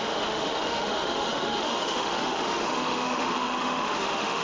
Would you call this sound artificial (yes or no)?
yes